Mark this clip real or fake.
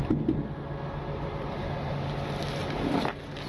real